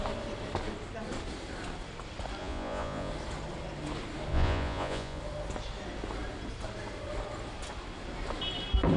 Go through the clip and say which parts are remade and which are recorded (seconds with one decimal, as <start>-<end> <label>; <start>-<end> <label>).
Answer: 0.0-2.4 recorded; 2.4-3.1 remade; 3.1-4.3 recorded; 4.3-5.2 remade; 5.2-9.0 recorded